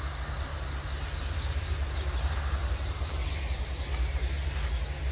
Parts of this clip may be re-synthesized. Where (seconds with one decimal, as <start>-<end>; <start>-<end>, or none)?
none